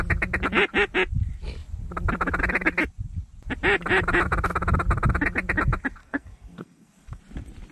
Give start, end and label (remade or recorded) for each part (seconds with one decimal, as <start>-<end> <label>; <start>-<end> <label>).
0.0-6.0 recorded; 6.0-7.2 remade; 7.2-7.7 recorded